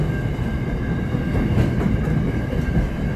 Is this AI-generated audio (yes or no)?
no